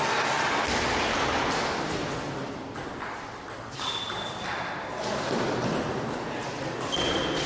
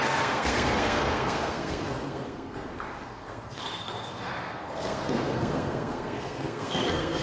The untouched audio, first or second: first